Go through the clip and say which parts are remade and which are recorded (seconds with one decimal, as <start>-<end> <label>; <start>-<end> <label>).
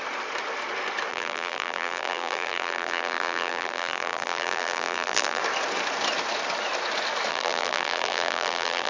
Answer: 0.0-1.1 recorded; 1.1-5.4 remade; 5.4-7.3 recorded; 7.3-8.9 remade